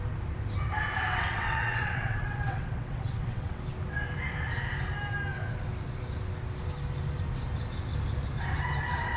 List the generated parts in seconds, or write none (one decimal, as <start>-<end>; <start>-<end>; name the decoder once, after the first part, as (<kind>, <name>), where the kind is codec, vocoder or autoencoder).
1.1-3.6 (vocoder, WaveNeXt)